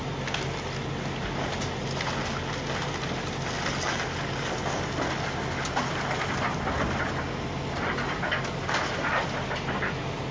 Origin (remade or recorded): recorded